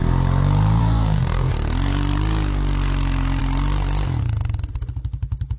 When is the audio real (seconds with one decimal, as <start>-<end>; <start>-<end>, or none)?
0.0-0.8; 1.5-5.6